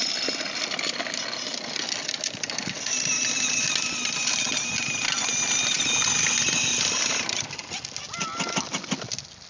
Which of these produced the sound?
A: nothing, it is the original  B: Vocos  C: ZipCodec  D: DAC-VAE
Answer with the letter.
A